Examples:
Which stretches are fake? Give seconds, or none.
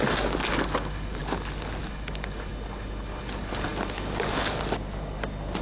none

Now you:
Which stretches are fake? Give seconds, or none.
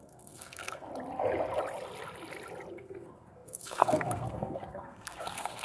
0.0-0.9 (codec, SNAC); 2.7-5.6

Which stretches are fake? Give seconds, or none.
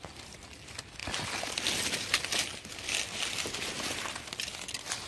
none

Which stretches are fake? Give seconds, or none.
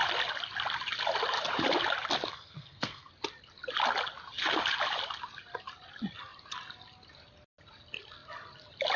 2.3-3.1 (codec, SNAC)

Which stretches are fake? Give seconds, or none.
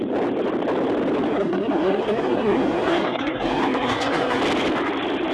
1.3-4.4 (codec, SNAC)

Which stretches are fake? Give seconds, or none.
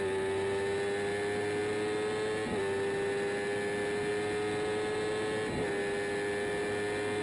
none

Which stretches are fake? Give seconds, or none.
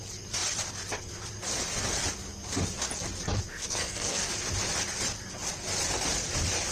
3.5-4.3 (codec, SNAC)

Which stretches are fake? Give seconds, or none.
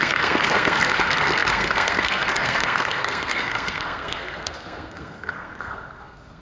0.0-6.4 (codec, SNAC)